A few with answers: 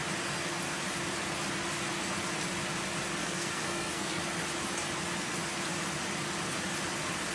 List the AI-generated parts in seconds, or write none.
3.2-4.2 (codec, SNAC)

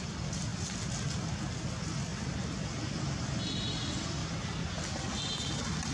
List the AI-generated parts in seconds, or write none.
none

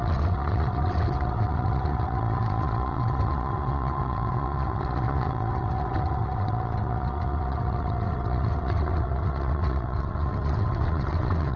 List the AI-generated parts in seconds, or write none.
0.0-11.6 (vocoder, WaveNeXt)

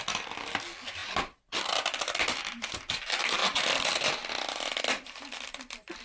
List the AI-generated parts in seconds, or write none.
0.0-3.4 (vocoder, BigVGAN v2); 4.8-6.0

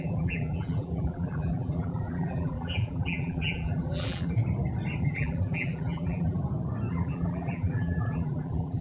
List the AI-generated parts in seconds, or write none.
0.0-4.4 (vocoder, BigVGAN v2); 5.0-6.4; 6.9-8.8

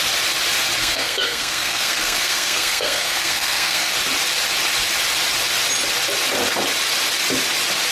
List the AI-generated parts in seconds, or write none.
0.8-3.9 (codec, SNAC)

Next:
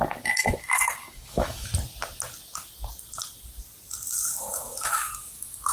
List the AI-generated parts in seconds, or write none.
0.0-1.7 (autoencoder, DAC-VAE); 4.4-5.7

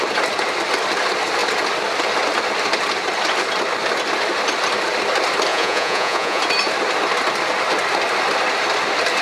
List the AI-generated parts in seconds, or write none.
5.5-6.4 (vocoder, Vocos)